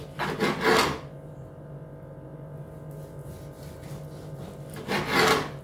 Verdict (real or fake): real